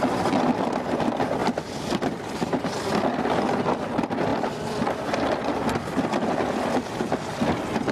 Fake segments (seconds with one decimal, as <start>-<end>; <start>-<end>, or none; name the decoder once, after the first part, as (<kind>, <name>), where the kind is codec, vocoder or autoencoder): none